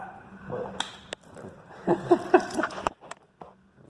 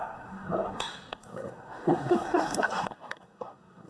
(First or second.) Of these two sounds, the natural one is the first